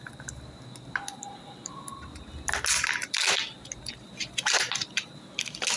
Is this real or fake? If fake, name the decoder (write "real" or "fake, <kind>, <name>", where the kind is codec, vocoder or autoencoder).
real